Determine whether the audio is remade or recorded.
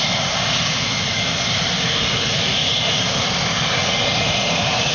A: recorded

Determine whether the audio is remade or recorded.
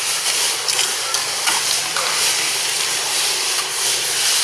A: recorded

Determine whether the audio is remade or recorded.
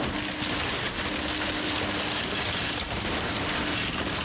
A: recorded